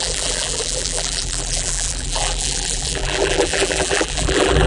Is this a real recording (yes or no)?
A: no